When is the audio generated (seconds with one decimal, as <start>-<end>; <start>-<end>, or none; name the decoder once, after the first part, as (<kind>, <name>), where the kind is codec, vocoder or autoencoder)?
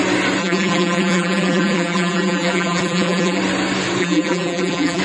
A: 0.4-3.4 (vocoder, BigVGAN v2); 4.0-5.0